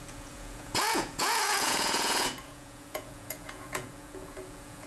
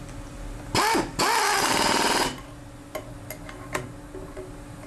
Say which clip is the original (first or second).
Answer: second